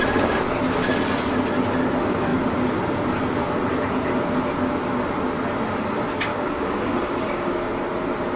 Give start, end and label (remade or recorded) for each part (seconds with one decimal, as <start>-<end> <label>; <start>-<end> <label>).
0.0-6.3 recorded; 6.3-7.7 remade; 7.7-8.4 recorded